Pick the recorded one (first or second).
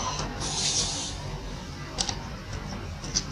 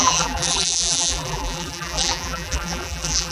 first